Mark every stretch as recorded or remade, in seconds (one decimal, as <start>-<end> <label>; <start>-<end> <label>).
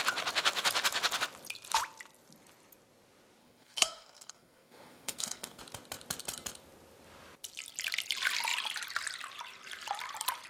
0.0-3.4 recorded; 3.4-5.6 remade; 5.6-10.5 recorded